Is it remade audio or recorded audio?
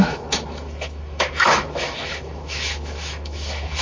remade